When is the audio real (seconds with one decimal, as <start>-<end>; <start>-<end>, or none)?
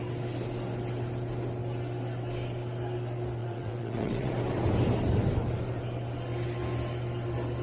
0.0-3.4; 4.3-7.6